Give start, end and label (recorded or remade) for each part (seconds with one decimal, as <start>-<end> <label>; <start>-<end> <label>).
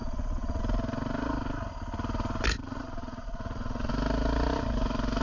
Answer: 0.0-0.6 remade; 0.6-2.6 recorded; 2.6-3.9 remade; 3.9-5.2 recorded